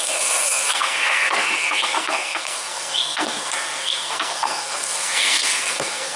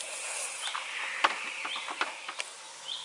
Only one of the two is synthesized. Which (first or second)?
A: first